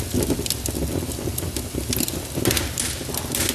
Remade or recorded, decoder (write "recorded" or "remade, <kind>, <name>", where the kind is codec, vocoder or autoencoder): recorded